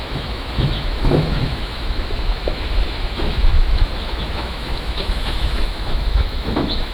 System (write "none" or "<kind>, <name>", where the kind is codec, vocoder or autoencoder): autoencoder, DAC-VAE